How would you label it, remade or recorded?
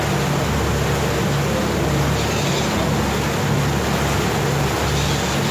recorded